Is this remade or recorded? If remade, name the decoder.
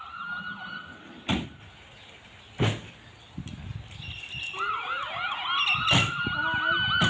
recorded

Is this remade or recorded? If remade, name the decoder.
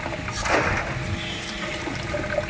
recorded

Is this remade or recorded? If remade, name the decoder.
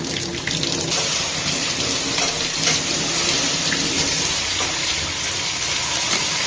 recorded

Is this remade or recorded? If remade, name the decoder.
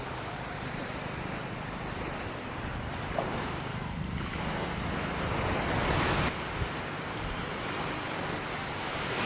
recorded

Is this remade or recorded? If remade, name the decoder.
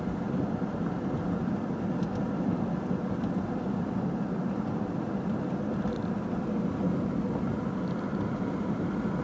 recorded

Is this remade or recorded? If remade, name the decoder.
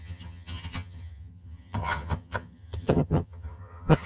remade, vocoder, HiFi-GAN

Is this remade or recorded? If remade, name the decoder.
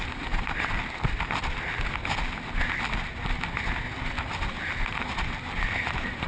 recorded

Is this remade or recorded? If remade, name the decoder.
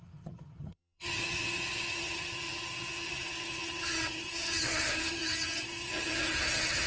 remade, vocoder, HiFi-GAN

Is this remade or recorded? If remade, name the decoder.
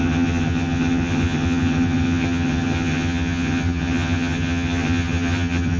remade, vocoder, HiFi-GAN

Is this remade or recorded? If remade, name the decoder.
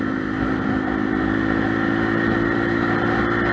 recorded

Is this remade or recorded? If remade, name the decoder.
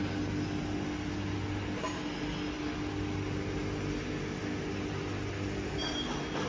recorded